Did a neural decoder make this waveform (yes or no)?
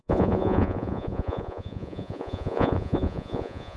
yes